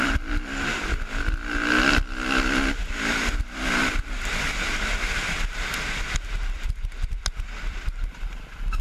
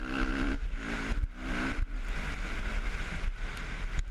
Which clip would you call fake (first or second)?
first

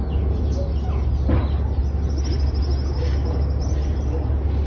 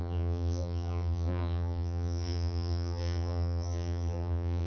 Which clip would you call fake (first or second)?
second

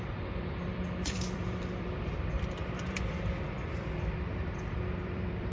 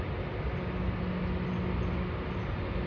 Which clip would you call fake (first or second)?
first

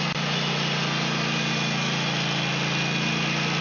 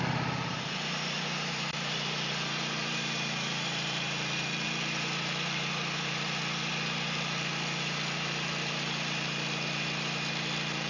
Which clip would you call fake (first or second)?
second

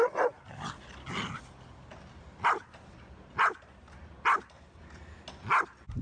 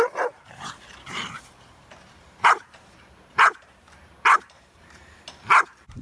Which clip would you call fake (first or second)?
second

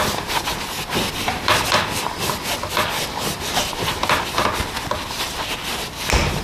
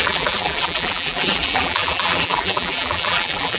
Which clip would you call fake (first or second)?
second